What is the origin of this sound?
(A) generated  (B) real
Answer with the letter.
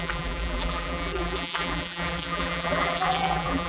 A